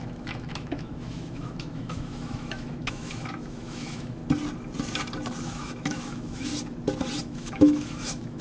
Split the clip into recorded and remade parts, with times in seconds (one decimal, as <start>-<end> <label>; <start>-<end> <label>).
0.0-4.2 remade; 4.2-5.4 recorded; 5.4-6.5 remade; 6.5-7.2 recorded; 7.2-8.4 remade